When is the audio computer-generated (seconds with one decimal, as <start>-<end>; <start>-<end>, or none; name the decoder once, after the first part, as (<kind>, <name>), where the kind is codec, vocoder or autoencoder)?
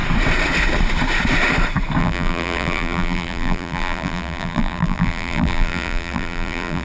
2.0-6.8 (vocoder, BigVGAN v2)